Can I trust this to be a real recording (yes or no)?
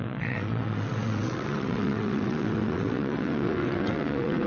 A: no